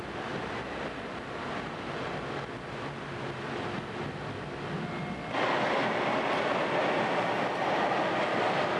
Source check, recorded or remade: recorded